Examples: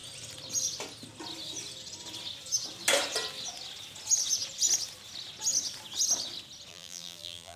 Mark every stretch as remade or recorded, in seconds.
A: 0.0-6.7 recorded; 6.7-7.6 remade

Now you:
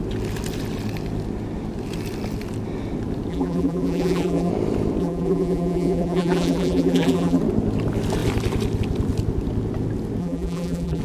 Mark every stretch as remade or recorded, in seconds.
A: 0.0-3.3 recorded; 3.3-4.5 remade; 4.5-5.0 recorded; 5.0-7.4 remade; 7.4-10.2 recorded; 10.2-11.0 remade

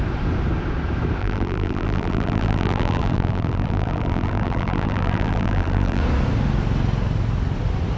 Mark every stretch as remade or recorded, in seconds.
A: 0.0-1.2 recorded; 1.2-6.0 remade; 6.0-8.0 recorded

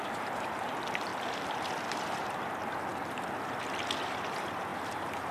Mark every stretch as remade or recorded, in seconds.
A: 0.0-1.1 remade; 1.1-2.2 recorded; 2.2-2.9 remade; 2.9-4.1 recorded; 4.1-5.3 remade

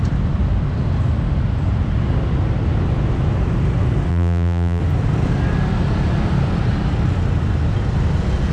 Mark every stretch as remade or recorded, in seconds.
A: 0.0-4.1 recorded; 4.1-4.8 remade; 4.8-8.5 recorded

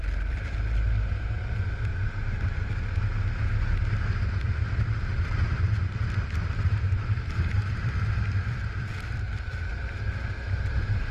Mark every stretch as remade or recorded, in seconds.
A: 0.0-1.9 remade; 1.9-4.8 recorded; 4.8-9.7 remade; 9.7-10.7 recorded; 10.7-11.1 remade

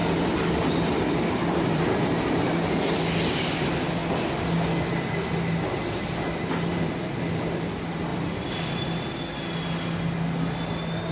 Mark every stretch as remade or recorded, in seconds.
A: 0.0-2.5 remade; 2.5-6.7 recorded; 6.7-7.4 remade; 7.4-8.1 recorded; 8.1-9.1 remade; 9.1-11.1 recorded